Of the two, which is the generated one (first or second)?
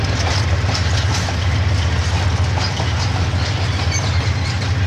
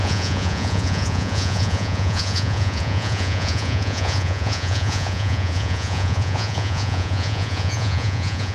second